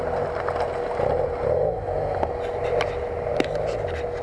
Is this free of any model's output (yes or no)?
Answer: yes